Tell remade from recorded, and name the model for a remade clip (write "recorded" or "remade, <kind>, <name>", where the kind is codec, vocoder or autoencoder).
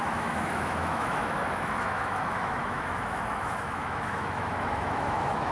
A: remade, autoencoder, DAC-VAE